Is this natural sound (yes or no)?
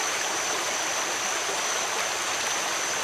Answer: yes